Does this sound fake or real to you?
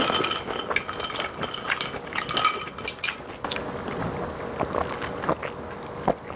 real